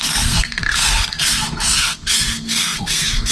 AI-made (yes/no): yes